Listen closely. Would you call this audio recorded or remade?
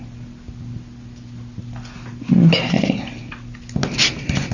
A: recorded